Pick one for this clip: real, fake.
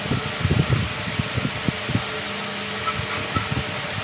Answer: real